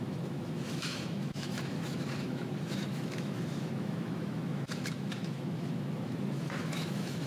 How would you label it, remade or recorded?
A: remade